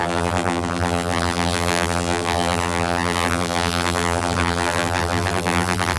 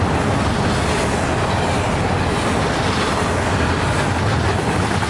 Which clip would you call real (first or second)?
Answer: second